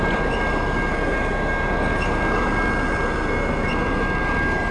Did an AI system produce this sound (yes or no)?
no